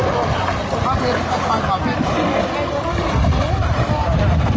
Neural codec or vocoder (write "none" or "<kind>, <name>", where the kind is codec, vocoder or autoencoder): none